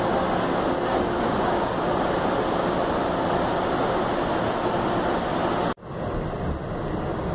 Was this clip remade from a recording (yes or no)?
no